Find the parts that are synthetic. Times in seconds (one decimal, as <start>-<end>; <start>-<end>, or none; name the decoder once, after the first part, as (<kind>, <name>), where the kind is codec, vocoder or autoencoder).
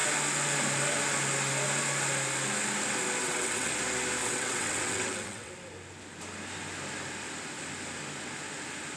3.2-3.7 (vocoder, WaveNeXt); 4.2-5.5